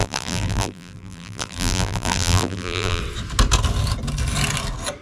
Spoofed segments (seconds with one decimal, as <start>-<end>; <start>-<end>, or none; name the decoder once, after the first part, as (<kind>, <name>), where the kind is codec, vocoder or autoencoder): 0.0-3.0 (vocoder, BigVGAN v2)

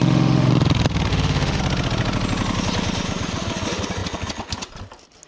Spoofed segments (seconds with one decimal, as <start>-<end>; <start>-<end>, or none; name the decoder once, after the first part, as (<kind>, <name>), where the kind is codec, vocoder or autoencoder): 0.0-0.5 (autoencoder, DAC-VAE); 1.1-1.6

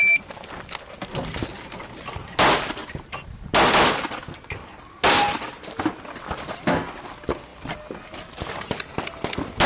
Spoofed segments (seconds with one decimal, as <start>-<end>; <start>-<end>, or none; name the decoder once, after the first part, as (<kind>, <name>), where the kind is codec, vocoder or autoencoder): none

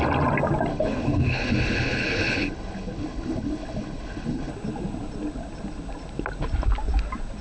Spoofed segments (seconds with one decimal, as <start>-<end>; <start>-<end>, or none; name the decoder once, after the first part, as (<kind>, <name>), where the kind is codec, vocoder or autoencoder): 0.7-4.5 (codec, HILCodec)